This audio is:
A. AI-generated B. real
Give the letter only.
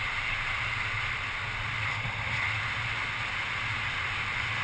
B